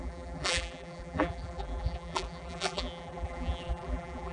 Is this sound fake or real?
fake